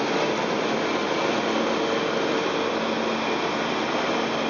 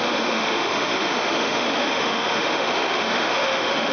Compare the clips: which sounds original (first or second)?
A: first